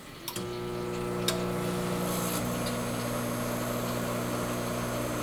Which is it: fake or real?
real